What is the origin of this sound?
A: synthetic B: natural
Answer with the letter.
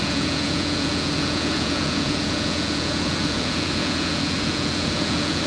A